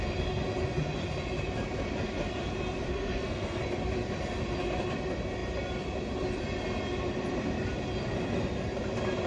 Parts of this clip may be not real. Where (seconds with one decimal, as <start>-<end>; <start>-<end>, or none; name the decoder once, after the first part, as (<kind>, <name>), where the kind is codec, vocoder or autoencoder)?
2.9-3.6 (codec, SNAC)

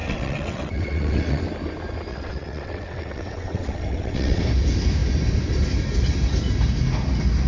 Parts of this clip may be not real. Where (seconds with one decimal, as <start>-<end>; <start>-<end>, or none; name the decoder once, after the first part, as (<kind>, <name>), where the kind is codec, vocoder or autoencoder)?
0.0-1.4 (vocoder, WaveNeXt); 2.1-4.4

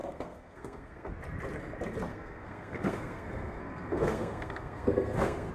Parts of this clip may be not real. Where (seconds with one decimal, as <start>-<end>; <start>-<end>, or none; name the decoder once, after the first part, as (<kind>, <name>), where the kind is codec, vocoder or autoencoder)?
0.0-1.1 (codec, SNAC); 2.1-5.5

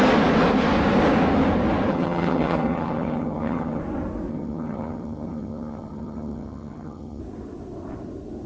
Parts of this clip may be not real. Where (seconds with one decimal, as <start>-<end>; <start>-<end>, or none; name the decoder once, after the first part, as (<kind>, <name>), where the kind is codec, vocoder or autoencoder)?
1.9-3.8 (vocoder, HiFi-GAN); 4.3-7.2

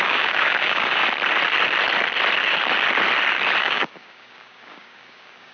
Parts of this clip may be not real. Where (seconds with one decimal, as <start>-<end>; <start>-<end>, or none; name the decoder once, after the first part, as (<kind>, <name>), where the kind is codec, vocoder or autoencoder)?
0.0-1.0 (codec, DAC); 3.6-5.5